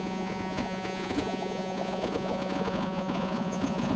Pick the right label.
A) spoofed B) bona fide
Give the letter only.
A